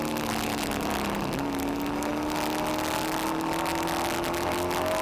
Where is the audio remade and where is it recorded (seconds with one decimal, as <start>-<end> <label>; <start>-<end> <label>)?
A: 0.0-5.0 recorded